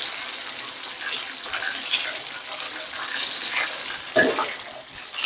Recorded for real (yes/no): yes